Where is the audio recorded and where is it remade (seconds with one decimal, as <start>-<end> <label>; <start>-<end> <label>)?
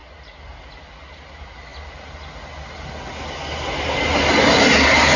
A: 0.0-5.2 recorded